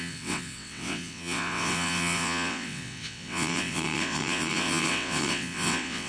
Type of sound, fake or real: fake